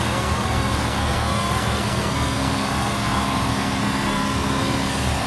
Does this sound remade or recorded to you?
remade